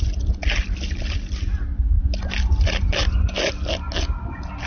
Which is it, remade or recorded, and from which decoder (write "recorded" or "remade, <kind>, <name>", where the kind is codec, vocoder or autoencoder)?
recorded